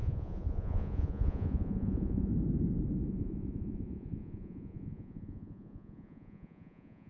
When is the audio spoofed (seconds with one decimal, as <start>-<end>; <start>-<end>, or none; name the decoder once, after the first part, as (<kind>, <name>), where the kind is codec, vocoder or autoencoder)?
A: 0.0-2.3 (vocoder, Vocos); 3.1-7.1